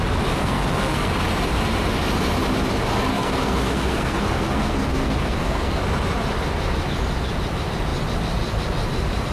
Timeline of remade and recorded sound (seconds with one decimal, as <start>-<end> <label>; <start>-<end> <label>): 0.0-0.4 recorded; 0.4-1.1 remade; 1.1-3.1 recorded; 3.1-5.8 remade; 5.8-9.3 recorded